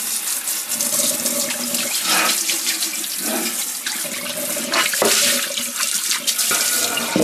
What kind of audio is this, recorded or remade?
remade